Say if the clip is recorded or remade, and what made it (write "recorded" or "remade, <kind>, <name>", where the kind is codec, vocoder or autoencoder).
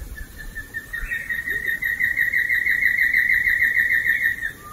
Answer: recorded